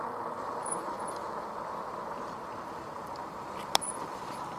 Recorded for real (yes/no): no